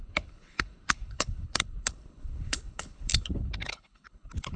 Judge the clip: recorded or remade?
remade